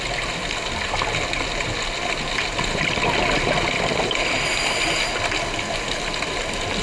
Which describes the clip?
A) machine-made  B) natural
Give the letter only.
B